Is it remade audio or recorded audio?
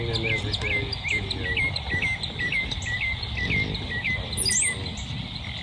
recorded